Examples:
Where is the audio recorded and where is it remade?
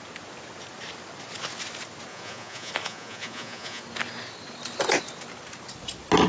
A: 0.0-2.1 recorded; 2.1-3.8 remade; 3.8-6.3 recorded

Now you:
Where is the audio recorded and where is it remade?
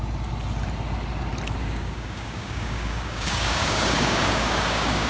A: 0.0-1.6 recorded; 1.6-5.1 remade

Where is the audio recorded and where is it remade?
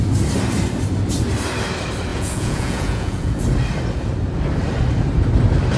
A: 0.0-2.1 recorded; 2.1-3.4 remade; 3.4-5.8 recorded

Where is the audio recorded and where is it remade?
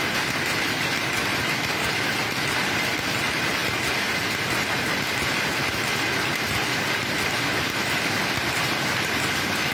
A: 0.0-9.7 recorded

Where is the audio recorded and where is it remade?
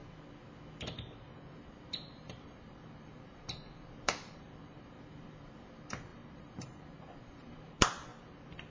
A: 0.0-1.6 recorded; 1.6-8.1 remade; 8.1-8.7 recorded